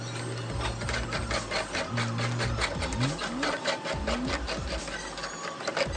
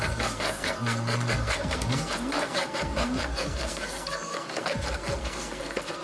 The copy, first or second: second